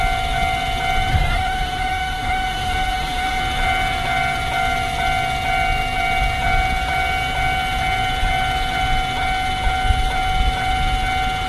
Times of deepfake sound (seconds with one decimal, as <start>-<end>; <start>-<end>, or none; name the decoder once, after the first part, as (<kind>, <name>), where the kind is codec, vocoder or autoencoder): 1.1-3.4 (autoencoder, DAC-VAE)